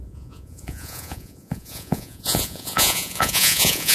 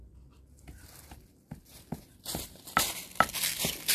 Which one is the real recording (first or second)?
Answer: second